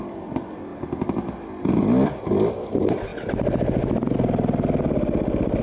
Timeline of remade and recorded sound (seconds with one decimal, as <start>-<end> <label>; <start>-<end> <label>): 0.0-5.6 recorded